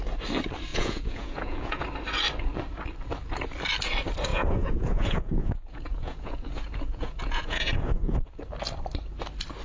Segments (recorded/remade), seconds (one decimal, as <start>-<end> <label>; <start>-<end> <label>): 0.0-0.7 recorded; 0.7-1.8 remade; 1.8-4.3 recorded; 4.3-8.3 remade; 8.3-9.6 recorded